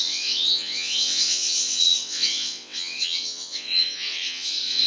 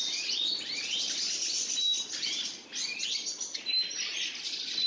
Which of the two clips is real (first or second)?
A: second